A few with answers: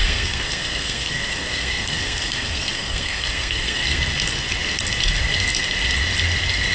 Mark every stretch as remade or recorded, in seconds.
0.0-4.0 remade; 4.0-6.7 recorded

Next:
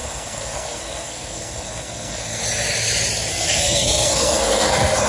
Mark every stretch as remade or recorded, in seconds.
0.0-2.4 remade; 2.4-3.3 recorded; 3.3-5.1 remade

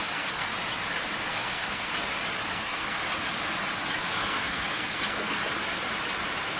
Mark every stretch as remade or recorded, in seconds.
0.0-0.5 remade; 0.5-1.3 recorded; 1.3-1.9 remade; 1.9-2.5 recorded; 2.5-3.0 remade; 3.0-4.0 recorded; 4.0-5.4 remade; 5.4-6.6 recorded